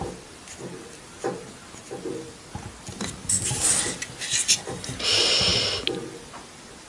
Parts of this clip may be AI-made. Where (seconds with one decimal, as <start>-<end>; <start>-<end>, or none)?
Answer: none

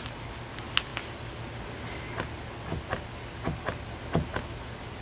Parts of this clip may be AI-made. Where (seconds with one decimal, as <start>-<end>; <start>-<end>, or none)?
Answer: none

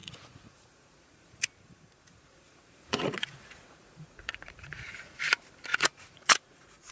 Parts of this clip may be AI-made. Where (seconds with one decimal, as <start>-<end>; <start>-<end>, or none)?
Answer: 0.0-1.5; 2.0-5.2; 5.7-6.9

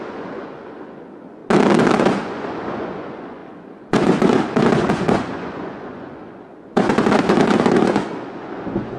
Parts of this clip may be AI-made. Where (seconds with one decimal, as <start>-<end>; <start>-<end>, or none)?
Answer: 0.0-1.4; 2.0-9.0

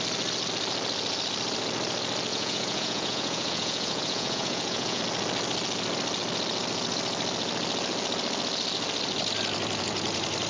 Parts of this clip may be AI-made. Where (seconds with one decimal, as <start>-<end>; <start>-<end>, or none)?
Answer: 2.3-5.0

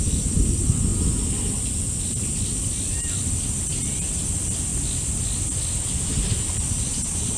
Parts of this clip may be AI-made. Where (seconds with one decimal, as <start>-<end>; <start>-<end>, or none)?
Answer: none

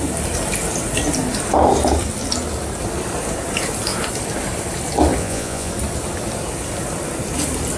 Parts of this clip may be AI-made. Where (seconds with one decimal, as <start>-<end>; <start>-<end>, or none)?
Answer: 5.2-5.7